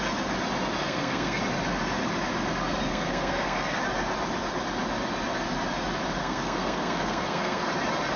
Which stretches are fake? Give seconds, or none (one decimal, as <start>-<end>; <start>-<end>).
0.8-1.4; 2.9-3.8; 6.2-7.7